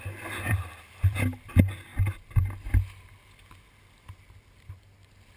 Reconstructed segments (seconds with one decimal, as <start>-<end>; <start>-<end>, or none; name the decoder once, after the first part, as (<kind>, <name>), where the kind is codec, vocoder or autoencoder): none